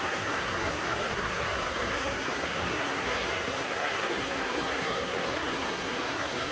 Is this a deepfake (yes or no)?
yes